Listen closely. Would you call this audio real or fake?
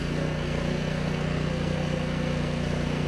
fake